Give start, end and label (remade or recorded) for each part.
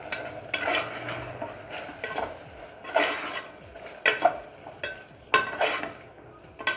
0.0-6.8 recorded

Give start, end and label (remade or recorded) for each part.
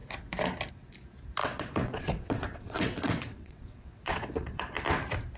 0.0-1.4 recorded; 1.4-4.6 remade; 4.6-5.4 recorded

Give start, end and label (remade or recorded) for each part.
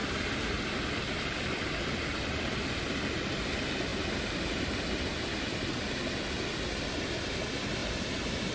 0.0-2.5 remade; 2.5-3.9 recorded; 3.9-5.7 remade; 5.7-7.8 recorded; 7.8-8.5 remade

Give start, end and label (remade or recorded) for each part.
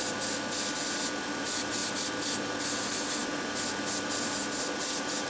0.0-5.3 recorded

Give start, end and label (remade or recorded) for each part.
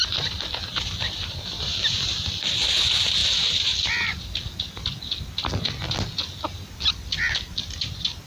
0.0-8.3 recorded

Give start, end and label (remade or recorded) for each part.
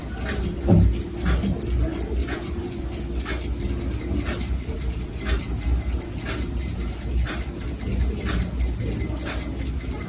0.0-2.2 recorded; 2.2-2.8 remade; 2.8-10.1 recorded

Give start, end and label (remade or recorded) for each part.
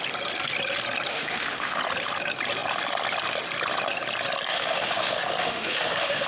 0.0-1.1 recorded; 1.1-1.8 remade; 1.8-4.5 recorded; 4.5-6.3 remade